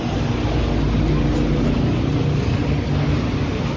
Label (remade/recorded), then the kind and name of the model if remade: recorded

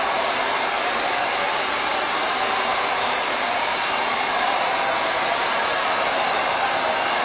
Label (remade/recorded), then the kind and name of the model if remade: remade, vocoder, BigVGAN v2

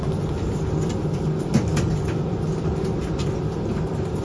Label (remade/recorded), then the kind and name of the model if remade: recorded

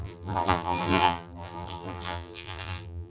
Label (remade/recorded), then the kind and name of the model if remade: remade, vocoder, BigVGAN v2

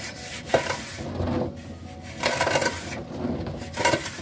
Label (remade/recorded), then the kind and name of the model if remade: recorded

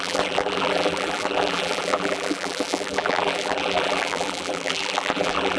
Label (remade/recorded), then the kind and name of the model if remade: remade, vocoder, BigVGAN v2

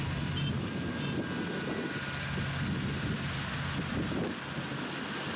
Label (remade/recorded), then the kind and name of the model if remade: recorded